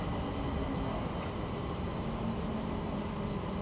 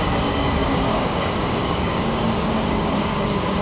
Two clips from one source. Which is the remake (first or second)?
second